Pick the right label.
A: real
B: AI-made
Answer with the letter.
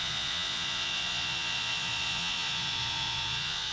B